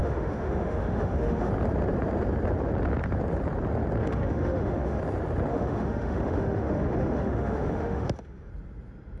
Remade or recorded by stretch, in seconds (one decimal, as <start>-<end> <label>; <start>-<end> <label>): 0.0-1.5 remade; 1.5-4.0 recorded; 4.0-5.0 remade; 5.0-5.5 recorded; 5.5-8.5 remade; 8.5-9.2 recorded